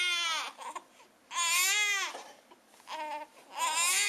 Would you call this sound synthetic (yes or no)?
no